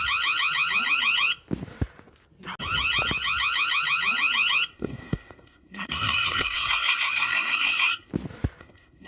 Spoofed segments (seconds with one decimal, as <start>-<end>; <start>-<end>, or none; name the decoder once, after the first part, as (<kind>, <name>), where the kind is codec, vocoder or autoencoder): 4.7-8.1 (codec, SNAC); 8.6-9.1

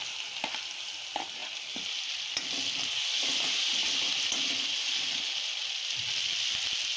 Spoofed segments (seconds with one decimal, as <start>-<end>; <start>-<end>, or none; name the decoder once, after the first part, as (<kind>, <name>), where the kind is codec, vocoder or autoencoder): none

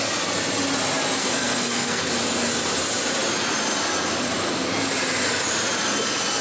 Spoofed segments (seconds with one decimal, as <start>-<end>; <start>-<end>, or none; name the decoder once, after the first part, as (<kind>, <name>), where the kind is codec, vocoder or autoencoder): 1.2-2.1 (codec, SNAC)

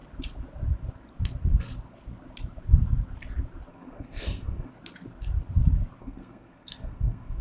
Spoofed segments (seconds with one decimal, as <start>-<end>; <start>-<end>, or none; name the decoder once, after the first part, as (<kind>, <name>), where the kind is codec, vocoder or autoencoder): 3.7-4.7 (codec, SNAC); 6.0-7.4

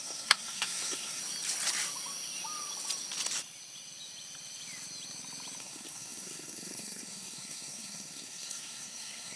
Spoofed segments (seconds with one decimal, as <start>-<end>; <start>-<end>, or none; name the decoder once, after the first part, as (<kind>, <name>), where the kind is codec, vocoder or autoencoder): 0.0-1.2 (codec, SNAC); 5.6-9.4

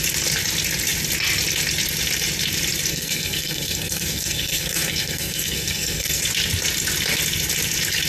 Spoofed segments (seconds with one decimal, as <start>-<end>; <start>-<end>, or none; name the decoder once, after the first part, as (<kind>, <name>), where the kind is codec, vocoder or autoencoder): 2.9-6.2 (codec, SNAC)

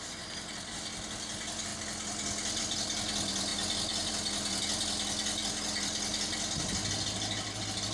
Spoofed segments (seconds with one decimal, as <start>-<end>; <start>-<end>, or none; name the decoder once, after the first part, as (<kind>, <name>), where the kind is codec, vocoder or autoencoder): none